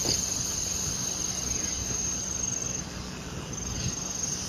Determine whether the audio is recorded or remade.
recorded